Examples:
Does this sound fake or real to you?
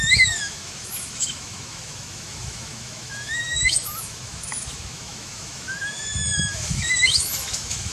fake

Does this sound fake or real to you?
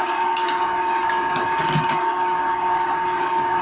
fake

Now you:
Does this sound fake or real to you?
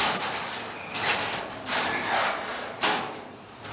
real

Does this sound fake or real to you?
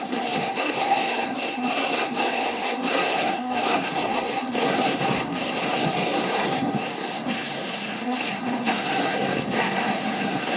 fake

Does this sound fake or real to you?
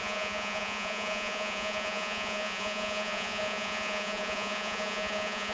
fake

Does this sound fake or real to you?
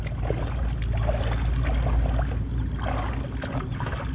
real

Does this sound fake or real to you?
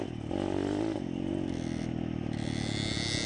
real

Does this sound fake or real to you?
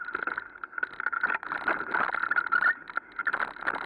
real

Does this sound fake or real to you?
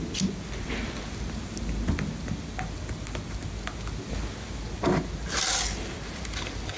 real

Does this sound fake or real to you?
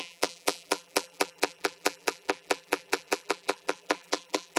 fake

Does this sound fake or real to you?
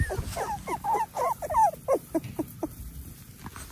real